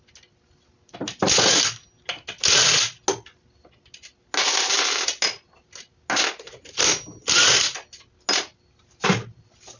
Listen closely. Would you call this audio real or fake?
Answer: real